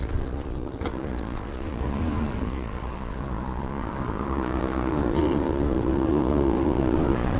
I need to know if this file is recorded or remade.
remade